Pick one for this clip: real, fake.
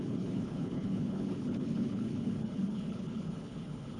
fake